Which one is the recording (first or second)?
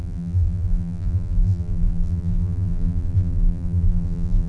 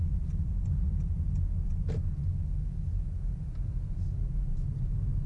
second